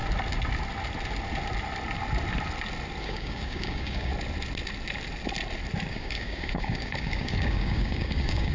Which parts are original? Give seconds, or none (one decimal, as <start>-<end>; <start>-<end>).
0.0-3.0; 4.1-5.9